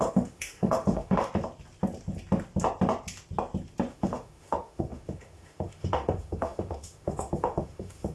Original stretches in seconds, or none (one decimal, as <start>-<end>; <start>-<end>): 1.3-3.9